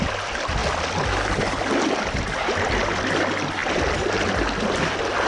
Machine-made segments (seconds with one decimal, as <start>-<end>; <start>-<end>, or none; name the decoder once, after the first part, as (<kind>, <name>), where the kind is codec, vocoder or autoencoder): none